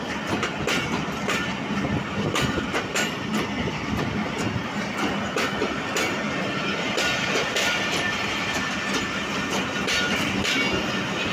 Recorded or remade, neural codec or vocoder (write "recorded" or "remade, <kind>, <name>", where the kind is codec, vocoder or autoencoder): recorded